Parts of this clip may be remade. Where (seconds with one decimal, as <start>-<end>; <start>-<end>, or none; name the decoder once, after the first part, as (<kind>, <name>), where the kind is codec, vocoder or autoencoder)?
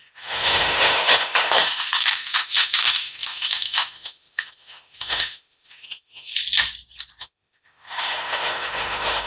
0.0-6.3 (autoencoder, DAC-VAE); 7.2-9.3